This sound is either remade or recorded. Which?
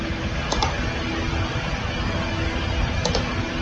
recorded